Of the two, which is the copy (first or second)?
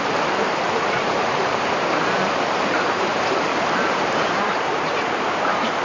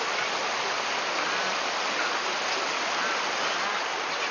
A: first